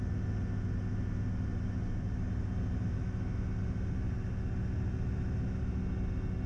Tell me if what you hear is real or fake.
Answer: real